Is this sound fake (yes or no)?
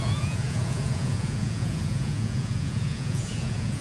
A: yes